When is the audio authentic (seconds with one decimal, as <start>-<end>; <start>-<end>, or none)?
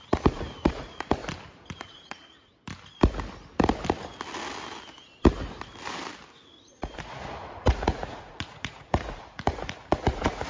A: 1.2-1.8; 2.6-6.3